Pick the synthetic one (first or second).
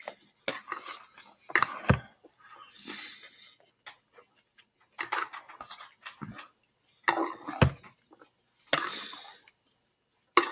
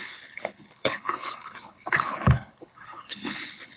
second